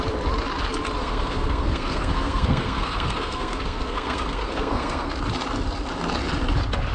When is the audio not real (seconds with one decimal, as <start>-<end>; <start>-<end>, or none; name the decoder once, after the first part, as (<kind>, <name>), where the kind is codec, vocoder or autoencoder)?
1.0-5.1 (codec, SNAC)